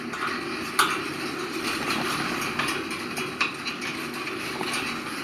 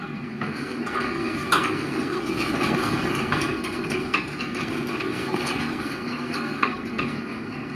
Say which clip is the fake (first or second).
second